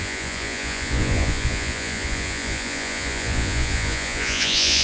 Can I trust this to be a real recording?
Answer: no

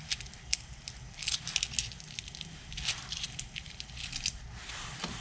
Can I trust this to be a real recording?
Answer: yes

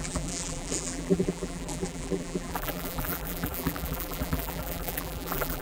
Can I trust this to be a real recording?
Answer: no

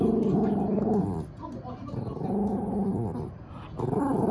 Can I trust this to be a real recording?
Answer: yes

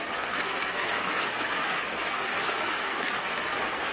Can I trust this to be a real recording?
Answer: no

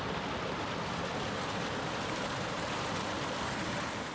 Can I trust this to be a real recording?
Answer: yes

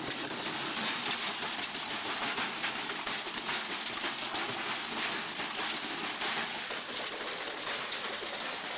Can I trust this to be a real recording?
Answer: yes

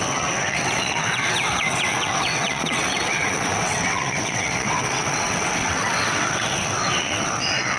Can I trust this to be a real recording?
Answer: no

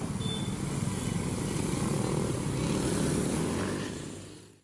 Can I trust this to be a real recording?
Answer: yes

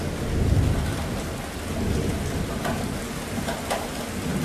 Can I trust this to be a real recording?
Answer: yes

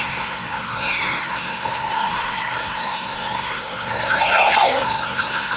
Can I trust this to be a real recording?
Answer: no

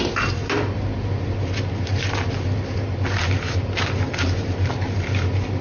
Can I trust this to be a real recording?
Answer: yes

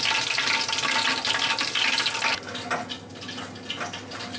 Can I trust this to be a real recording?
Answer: yes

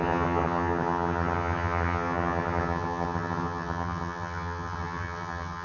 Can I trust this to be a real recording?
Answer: no